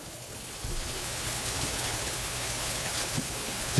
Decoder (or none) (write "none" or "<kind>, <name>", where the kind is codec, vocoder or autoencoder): codec, HILCodec